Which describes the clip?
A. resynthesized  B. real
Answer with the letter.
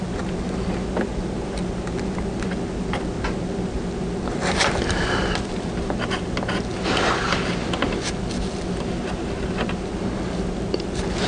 B